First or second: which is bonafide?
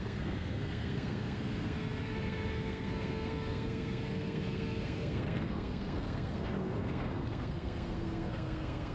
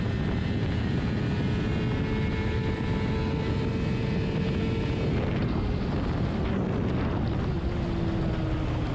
second